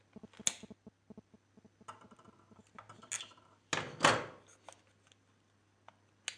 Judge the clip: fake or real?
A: real